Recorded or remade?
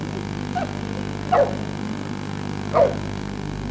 recorded